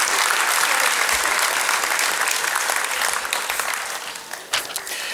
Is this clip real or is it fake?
real